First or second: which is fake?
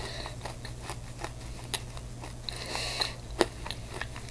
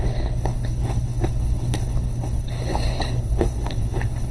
second